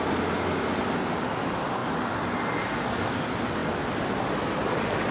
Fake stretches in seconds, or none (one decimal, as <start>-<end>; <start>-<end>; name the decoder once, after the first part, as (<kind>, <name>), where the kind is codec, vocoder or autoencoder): none

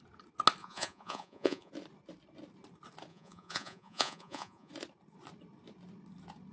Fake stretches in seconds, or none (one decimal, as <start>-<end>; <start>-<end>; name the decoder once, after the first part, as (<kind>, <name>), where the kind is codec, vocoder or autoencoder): 0.6-1.7 (vocoder, Vocos); 3.1-4.7

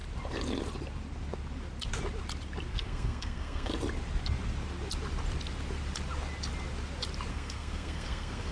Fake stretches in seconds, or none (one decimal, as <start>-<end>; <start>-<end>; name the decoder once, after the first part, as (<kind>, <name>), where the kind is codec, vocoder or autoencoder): 2.7-3.7 (codec, SNAC); 7.3-8.5

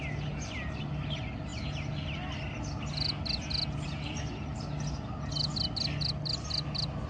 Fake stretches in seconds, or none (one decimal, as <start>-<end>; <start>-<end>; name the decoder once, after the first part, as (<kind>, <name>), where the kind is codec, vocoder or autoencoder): none